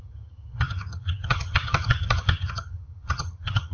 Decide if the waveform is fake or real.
fake